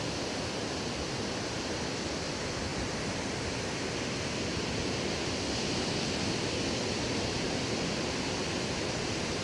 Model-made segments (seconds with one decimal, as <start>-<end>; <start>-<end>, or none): none